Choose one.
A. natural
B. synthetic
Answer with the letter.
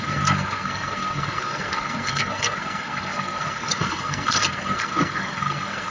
B